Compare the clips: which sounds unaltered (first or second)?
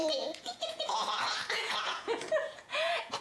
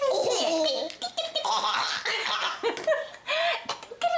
second